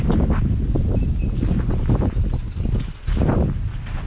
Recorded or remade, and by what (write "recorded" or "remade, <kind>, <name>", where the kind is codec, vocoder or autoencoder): recorded